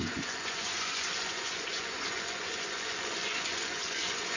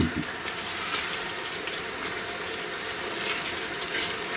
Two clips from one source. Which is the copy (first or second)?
first